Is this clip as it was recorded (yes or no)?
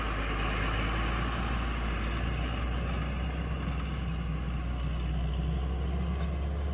yes